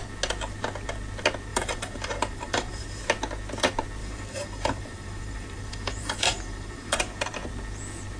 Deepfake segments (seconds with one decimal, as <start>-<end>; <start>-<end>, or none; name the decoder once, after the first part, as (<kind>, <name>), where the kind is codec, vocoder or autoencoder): 1.5-3.0 (vocoder, BigVGAN v2); 4.0-7.0